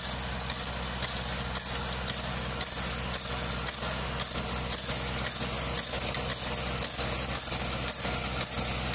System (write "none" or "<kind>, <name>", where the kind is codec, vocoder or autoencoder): none